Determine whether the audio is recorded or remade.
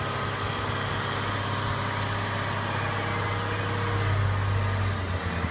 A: recorded